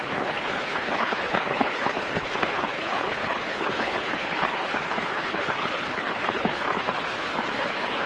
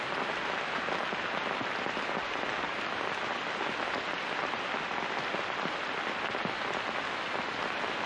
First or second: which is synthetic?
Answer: first